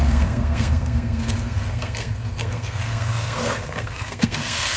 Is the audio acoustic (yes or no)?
no